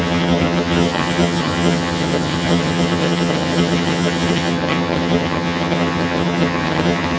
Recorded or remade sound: remade